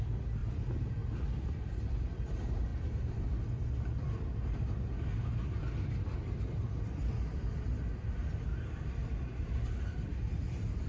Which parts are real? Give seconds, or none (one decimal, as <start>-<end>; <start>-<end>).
0.0-10.9